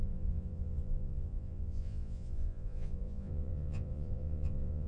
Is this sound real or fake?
fake